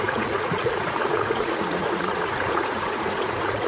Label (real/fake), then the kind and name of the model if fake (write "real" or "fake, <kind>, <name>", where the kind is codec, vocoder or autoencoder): fake, vocoder, Vocos